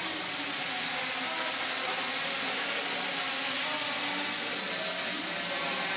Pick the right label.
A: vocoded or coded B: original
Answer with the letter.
B